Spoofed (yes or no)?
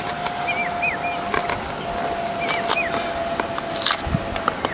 no